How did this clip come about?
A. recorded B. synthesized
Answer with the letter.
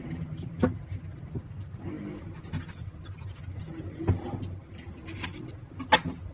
A